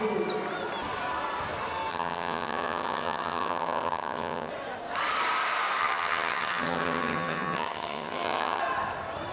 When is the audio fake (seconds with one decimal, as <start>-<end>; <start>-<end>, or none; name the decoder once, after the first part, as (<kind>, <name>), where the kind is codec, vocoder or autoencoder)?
1.9-4.5 (vocoder, HiFi-GAN); 5.8-8.6